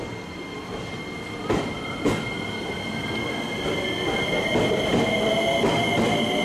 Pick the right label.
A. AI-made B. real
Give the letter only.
B